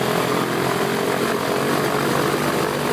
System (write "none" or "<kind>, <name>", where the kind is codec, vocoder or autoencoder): none